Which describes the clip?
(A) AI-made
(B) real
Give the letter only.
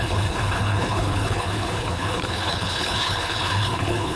A